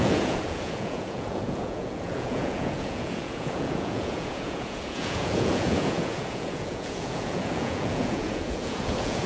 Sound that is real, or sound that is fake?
fake